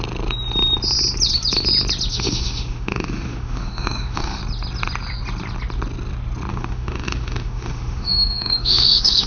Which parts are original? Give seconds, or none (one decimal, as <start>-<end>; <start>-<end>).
0.0-2.1; 4.4-6.5